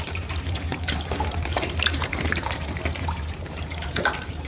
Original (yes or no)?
no